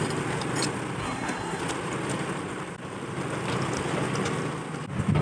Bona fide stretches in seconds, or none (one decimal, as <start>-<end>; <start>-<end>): 0.0-1.0; 1.6-5.2

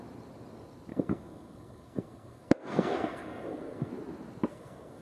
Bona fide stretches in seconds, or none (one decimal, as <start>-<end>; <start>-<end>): 0.0-0.9; 3.9-4.5

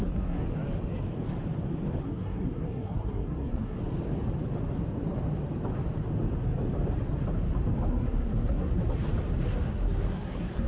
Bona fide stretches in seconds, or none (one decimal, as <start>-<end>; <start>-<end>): 0.4-2.0; 3.8-7.9; 8.8-9.4